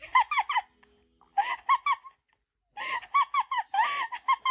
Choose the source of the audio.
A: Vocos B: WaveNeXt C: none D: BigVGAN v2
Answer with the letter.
C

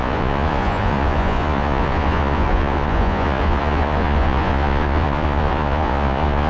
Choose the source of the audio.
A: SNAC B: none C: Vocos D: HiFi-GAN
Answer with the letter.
C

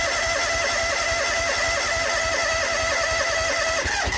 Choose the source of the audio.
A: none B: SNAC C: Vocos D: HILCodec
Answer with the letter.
A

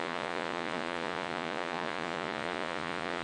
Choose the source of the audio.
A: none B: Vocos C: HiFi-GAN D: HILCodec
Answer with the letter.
B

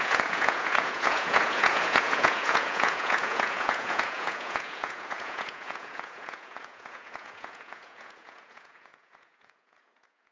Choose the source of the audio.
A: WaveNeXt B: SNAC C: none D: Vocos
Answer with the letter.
D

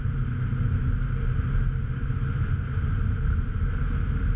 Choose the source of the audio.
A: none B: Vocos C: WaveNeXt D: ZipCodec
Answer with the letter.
A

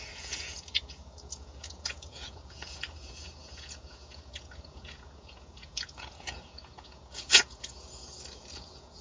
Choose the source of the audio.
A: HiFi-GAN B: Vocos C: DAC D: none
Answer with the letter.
B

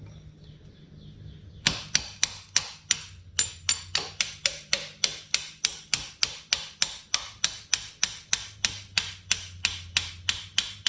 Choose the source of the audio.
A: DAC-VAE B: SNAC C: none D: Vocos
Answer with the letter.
C